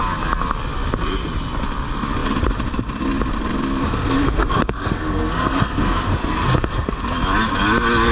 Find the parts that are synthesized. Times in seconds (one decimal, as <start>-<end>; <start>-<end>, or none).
3.8-7.0